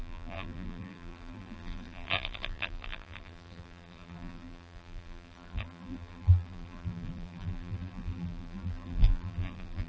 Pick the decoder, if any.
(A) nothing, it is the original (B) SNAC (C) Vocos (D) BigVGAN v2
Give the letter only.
D